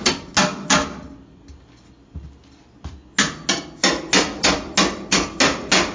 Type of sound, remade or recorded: recorded